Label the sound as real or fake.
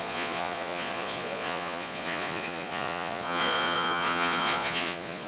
fake